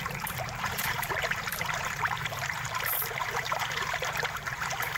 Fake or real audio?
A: fake